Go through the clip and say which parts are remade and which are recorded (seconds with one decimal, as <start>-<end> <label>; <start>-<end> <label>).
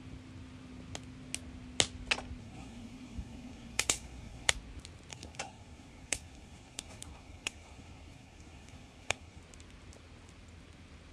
0.0-2.4 recorded; 2.4-4.5 remade; 4.5-5.1 recorded; 5.1-9.4 remade; 9.4-11.1 recorded